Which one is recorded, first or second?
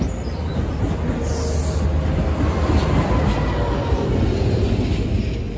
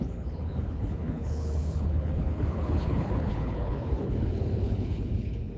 first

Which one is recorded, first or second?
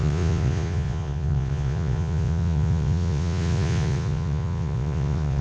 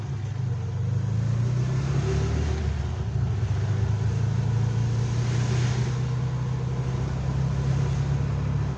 second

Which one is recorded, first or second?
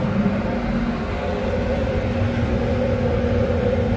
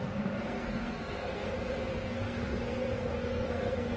first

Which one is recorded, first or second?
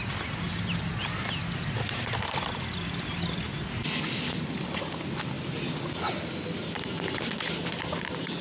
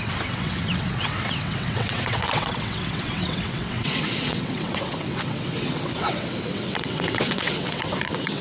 first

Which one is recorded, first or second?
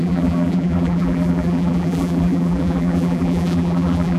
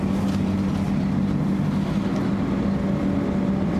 second